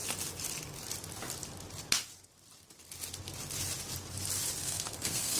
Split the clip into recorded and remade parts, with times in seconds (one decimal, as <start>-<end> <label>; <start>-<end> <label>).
0.0-4.6 recorded; 4.6-5.4 remade